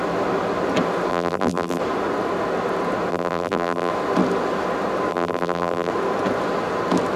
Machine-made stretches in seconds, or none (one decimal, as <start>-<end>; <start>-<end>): 1.1-1.8; 3.1-3.9; 5.1-5.9